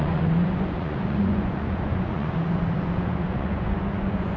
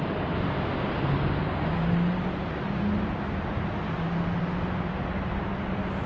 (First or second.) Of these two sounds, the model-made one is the first